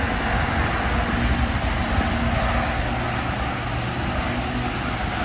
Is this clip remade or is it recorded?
recorded